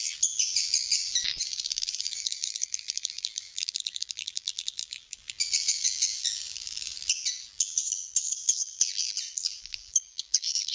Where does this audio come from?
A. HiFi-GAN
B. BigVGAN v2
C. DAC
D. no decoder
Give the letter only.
B